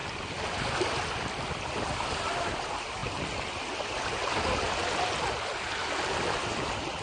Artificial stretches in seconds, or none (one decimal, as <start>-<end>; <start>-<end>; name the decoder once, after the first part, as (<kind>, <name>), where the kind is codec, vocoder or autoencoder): none